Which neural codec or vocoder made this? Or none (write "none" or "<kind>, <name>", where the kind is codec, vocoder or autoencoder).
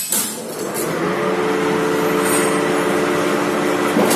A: none